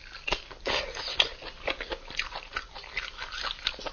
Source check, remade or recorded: recorded